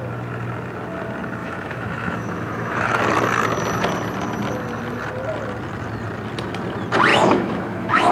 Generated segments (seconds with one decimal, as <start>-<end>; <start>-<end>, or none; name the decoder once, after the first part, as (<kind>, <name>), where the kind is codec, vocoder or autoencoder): 1.4-3.0 (autoencoder, DAC-VAE); 7.1-8.1